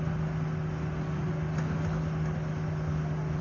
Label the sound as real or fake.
real